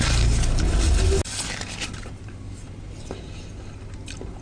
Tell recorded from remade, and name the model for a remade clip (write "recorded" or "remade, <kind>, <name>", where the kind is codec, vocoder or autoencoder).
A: recorded